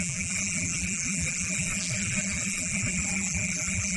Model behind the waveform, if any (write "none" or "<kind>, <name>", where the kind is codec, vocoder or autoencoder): vocoder, BigVGAN v2